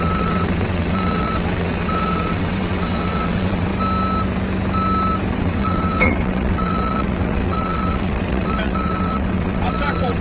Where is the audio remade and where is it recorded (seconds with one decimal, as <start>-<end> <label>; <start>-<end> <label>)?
0.0-3.7 remade; 3.7-5.3 recorded; 5.3-10.2 remade